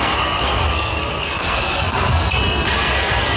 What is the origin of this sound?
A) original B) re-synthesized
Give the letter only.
B